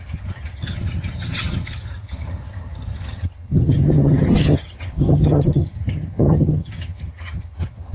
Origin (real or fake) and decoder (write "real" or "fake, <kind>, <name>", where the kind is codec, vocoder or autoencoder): fake, vocoder, HiFi-GAN